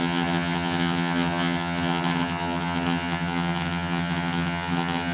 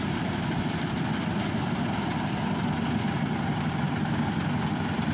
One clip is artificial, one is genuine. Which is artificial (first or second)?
first